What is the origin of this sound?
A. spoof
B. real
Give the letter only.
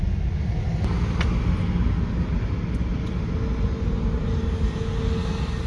B